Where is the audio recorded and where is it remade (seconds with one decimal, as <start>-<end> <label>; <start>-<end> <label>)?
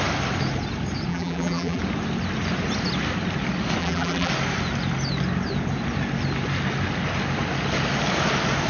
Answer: 0.0-1.1 recorded; 1.1-1.8 remade; 1.8-3.8 recorded; 3.8-4.3 remade; 4.3-8.7 recorded